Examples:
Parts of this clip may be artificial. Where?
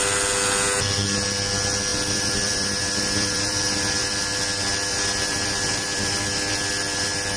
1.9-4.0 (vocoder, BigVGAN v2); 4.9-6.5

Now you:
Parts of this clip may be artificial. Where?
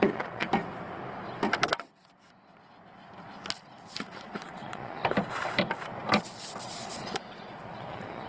0.0-0.5 (vocoder, Vocos); 4.2-5.0; 6.6-8.3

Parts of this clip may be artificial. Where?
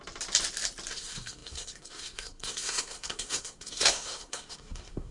0.9-5.1 (codec, SNAC)